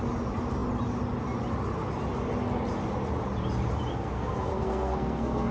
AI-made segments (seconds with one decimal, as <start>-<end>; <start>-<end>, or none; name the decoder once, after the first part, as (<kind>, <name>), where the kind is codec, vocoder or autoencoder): 3.9-5.5 (codec, SNAC)